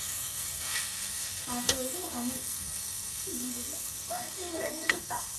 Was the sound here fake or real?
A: fake